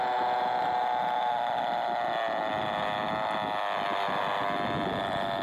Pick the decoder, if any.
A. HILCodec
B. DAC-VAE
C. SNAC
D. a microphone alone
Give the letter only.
D